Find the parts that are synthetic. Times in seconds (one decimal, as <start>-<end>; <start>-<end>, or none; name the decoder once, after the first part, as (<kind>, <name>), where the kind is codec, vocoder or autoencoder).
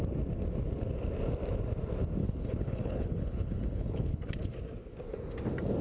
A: 2.2-4.3 (codec, HILCodec)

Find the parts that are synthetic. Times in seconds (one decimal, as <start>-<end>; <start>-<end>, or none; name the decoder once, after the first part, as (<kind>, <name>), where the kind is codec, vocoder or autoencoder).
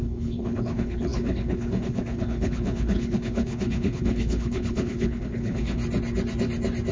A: 0.0-5.8 (codec, HILCodec)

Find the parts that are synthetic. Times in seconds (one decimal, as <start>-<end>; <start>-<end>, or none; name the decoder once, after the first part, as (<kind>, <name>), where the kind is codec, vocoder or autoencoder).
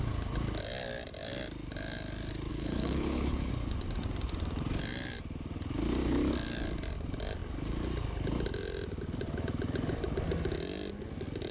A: 2.5-3.5 (codec, HILCodec)